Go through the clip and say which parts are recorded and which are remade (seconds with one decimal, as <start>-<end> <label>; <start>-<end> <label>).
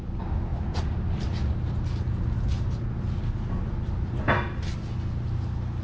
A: 0.0-5.8 recorded